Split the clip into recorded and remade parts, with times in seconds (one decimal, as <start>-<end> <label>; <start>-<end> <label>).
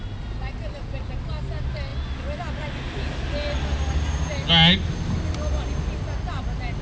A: 0.0-6.8 recorded